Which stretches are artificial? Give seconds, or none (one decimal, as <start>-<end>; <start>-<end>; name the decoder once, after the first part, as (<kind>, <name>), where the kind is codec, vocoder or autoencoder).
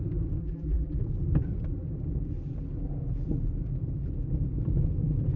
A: 0.4-1.0 (vocoder, BigVGAN v2)